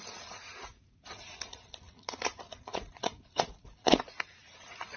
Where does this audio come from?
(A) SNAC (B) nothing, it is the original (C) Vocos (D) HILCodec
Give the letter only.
C